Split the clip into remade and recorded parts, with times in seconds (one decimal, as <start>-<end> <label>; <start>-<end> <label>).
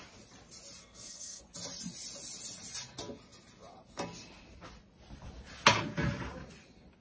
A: 0.0-0.8 recorded; 0.8-1.4 remade; 1.4-7.0 recorded